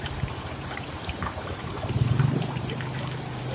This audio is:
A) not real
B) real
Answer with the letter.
A